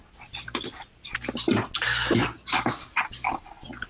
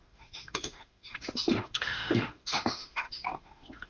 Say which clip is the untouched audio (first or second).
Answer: first